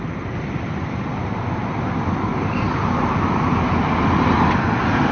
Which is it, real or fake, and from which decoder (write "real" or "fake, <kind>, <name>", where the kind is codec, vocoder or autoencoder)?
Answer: real